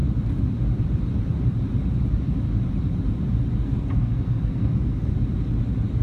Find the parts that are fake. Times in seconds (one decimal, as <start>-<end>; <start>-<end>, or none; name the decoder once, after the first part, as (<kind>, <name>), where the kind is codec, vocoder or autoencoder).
3.6-5.1 (codec, SNAC)